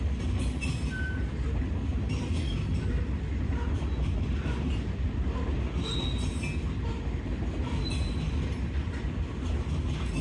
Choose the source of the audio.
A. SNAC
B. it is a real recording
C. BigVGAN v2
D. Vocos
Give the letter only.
B